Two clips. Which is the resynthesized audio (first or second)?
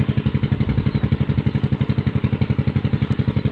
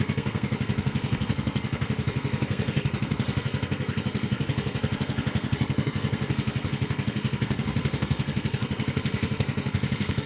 second